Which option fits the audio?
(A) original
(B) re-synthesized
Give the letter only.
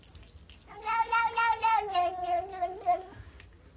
A